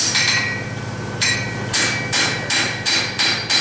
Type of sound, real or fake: fake